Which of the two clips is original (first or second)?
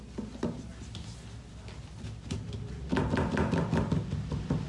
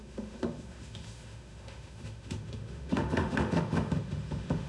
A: first